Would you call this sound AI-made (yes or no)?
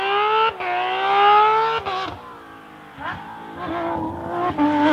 no